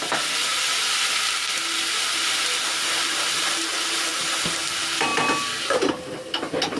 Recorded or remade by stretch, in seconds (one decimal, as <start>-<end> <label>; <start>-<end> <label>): 0.0-6.8 recorded